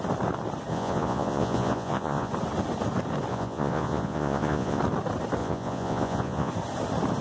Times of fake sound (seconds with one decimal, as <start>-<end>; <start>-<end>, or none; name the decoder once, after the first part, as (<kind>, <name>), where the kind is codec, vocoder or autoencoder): 0.7-2.3 (vocoder, Vocos); 3.3-4.8; 5.4-6.5